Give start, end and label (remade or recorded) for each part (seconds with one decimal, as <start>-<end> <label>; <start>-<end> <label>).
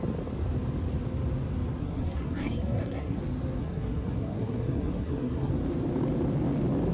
0.0-1.8 recorded; 1.8-3.2 remade; 3.2-3.6 recorded; 3.6-5.5 remade; 5.5-6.9 recorded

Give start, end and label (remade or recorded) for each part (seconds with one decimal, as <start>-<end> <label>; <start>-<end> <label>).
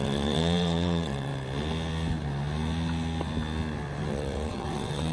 0.0-1.3 remade; 1.3-4.1 recorded; 4.1-5.1 remade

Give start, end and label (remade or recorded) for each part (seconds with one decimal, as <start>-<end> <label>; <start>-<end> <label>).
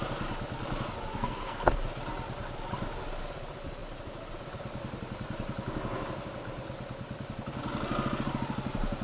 0.0-1.1 recorded; 1.1-1.8 remade; 1.8-9.0 recorded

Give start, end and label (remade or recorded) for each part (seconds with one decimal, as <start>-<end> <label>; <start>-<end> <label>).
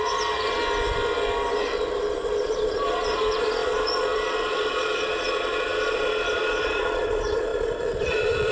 0.0-0.6 remade; 0.6-2.4 recorded; 2.4-8.5 remade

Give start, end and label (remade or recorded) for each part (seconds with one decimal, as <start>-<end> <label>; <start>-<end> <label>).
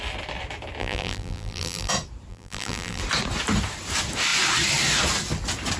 0.0-0.8 recorded; 0.8-1.9 remade; 1.9-2.3 recorded; 2.3-3.0 remade; 3.0-5.8 recorded